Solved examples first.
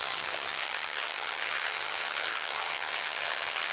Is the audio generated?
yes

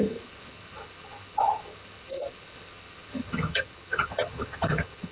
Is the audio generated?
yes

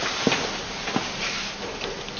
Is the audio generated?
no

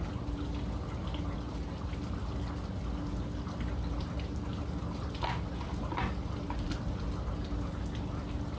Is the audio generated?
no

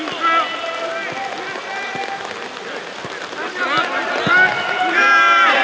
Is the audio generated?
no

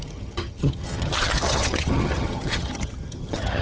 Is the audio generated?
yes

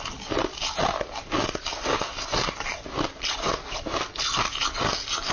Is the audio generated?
no